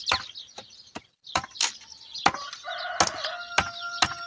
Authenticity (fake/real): real